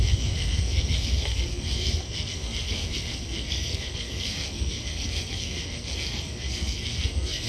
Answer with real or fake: fake